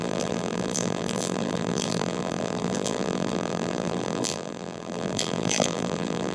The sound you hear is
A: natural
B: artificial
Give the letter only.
B